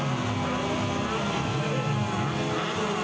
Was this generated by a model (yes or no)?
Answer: no